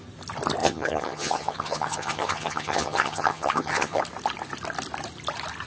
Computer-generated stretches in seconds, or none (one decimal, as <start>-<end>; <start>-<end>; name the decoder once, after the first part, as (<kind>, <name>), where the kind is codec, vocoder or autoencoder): 0.6-4.0 (vocoder, HiFi-GAN)